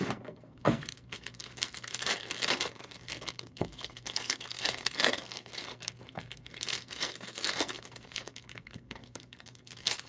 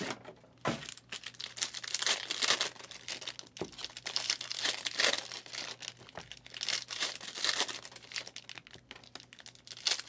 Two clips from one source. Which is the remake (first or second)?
first